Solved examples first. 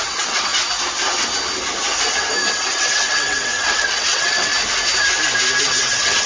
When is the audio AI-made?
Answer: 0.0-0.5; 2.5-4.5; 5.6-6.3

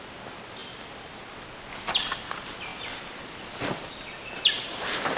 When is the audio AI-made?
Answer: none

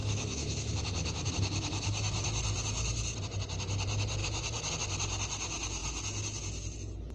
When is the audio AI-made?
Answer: 0.0-1.3; 4.2-4.7

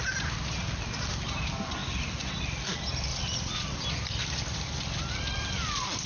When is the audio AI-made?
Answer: 3.1-3.7

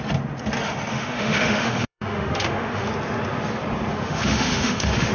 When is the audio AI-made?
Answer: 0.9-2.9; 3.9-5.1

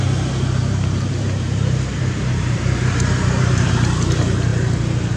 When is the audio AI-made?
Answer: 0.6-3.7

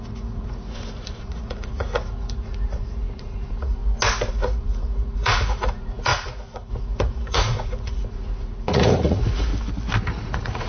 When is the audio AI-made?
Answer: 0.0-3.8; 4.3-9.5; 10.0-10.7